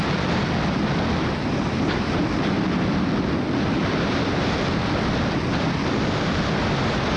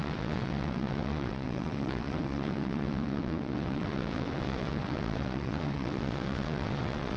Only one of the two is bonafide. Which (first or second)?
first